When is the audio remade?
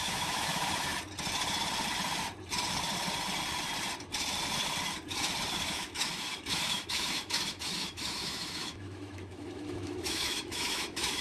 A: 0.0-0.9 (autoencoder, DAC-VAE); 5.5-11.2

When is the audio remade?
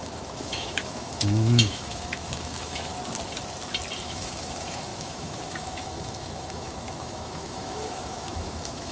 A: 0.0-2.9 (autoencoder, DAC-VAE); 4.0-8.9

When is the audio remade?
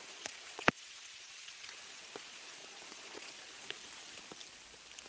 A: 0.0-3.8 (vocoder, Vocos)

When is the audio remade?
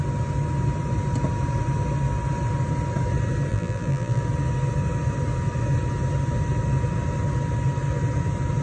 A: 3.5-4.2 (vocoder, BigVGAN v2)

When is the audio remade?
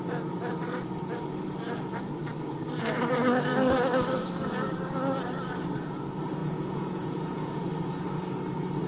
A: 6.4-7.7 (vocoder, Vocos)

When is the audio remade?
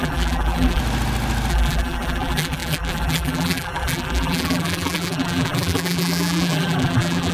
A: 0.0-0.8 (vocoder, BigVGAN v2); 1.5-7.3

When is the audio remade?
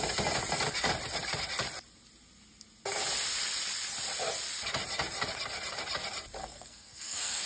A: 6.4-7.5 (codec, SNAC)